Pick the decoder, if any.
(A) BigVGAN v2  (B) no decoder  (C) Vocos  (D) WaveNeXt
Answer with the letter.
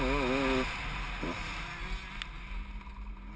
B